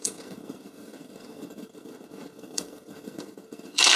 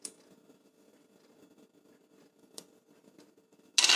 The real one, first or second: second